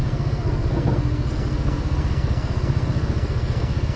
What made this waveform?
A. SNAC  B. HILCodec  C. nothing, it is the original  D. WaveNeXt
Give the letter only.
A